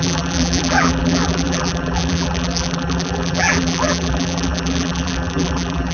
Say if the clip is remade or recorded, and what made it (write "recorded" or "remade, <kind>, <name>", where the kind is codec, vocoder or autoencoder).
remade, vocoder, BigVGAN v2